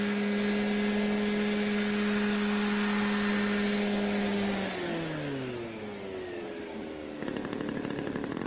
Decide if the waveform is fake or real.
real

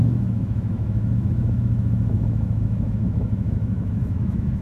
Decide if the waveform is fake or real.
fake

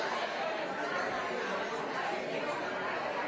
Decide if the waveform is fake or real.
fake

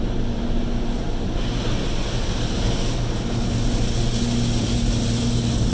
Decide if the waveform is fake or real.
real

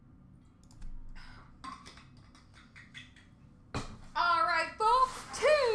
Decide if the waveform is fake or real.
real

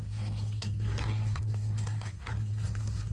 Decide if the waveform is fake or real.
fake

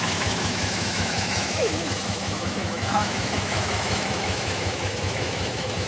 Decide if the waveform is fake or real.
fake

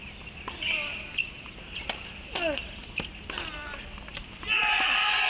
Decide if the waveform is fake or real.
real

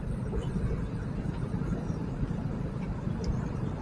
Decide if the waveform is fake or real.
real